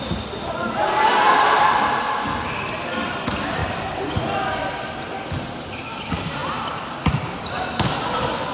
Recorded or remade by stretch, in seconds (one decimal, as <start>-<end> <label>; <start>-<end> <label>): 0.0-8.5 recorded

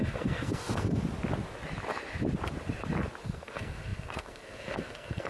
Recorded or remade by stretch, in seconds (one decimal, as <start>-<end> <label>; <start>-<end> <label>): 0.0-1.0 remade; 1.0-3.2 recorded; 3.2-5.3 remade

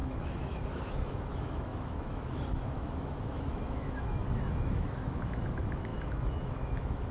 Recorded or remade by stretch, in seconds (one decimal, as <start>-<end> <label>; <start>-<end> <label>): 0.0-7.1 remade